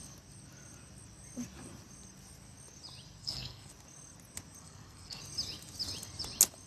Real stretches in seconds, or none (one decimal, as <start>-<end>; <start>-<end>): 0.0-3.2; 3.7-4.6; 5.2-6.7